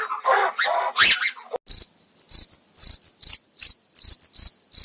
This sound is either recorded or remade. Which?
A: recorded